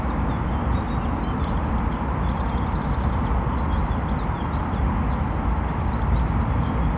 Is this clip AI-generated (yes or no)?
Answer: no